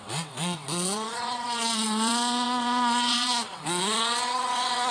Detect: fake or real fake